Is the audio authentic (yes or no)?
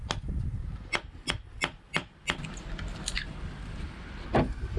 yes